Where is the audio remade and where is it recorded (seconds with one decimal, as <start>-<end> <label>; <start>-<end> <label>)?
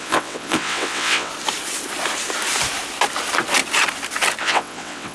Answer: 0.0-1.3 remade; 1.3-4.4 recorded; 4.4-5.1 remade